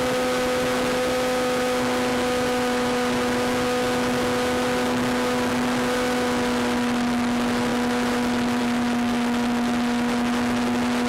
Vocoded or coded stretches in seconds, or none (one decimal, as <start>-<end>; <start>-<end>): none